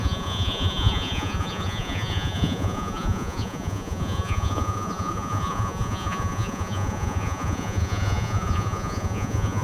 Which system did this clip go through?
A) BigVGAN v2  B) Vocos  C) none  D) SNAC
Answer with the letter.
B